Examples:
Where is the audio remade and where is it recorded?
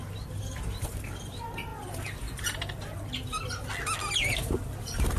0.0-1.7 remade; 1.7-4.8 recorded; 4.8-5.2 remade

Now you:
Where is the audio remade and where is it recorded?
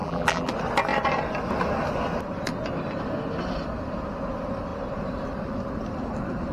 0.0-0.5 remade; 0.5-6.5 recorded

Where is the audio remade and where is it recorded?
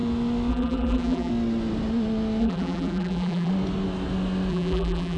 0.0-0.5 recorded; 0.5-1.3 remade; 1.3-2.4 recorded; 2.4-3.5 remade; 3.5-4.5 recorded; 4.5-5.2 remade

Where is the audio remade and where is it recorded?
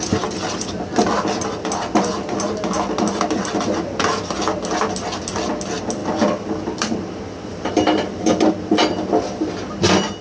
0.0-6.0 recorded; 6.0-8.5 remade; 8.5-10.2 recorded